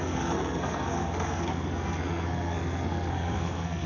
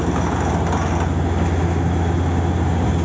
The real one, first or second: second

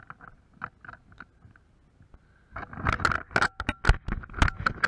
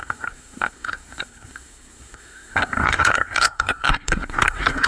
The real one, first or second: first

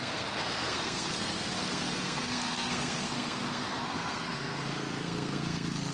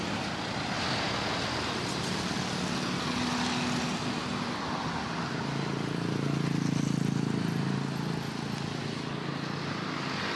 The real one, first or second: second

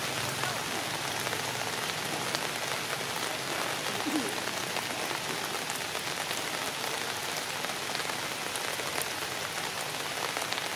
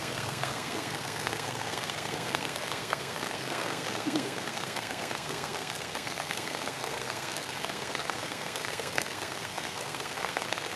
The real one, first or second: first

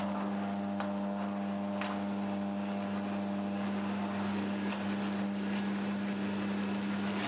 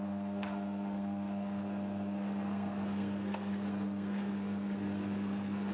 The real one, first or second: first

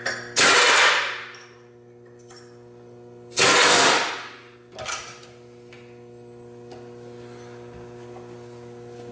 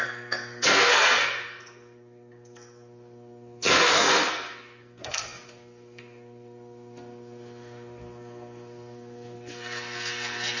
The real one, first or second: first